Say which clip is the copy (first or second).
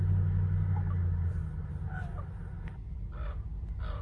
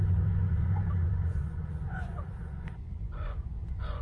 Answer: second